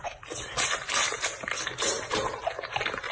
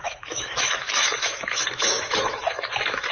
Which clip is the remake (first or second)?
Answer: second